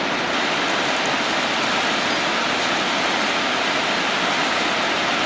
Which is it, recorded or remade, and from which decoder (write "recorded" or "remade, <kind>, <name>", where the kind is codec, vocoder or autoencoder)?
recorded